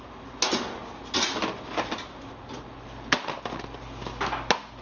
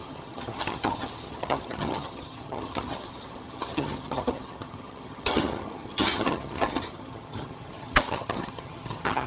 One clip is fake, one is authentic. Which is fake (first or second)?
second